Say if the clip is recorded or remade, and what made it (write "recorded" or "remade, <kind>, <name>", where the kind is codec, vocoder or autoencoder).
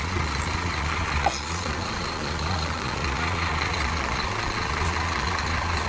remade, vocoder, Vocos